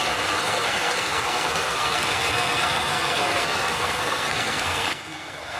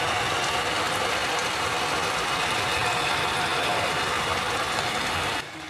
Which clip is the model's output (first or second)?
first